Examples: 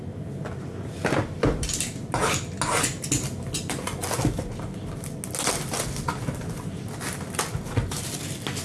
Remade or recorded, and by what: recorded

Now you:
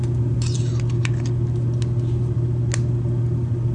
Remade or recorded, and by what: recorded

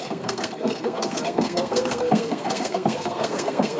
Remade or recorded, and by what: remade, codec, SNAC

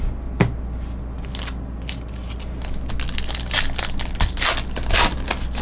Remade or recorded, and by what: recorded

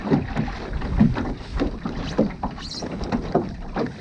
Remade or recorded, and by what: recorded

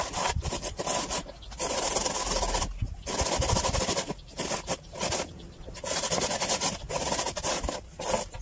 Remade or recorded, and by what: recorded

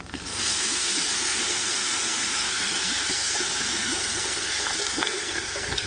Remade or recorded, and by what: remade, codec, SNAC